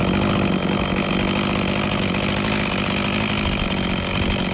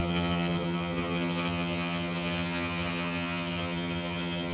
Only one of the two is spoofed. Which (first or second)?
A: second